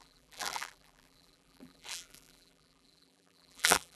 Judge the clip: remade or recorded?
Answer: remade